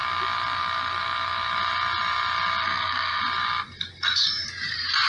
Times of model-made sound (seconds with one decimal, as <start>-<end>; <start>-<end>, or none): 2.6-3.2